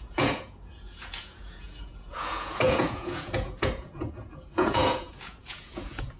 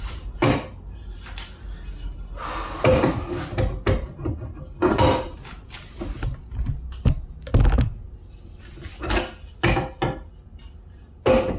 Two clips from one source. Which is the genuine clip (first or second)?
second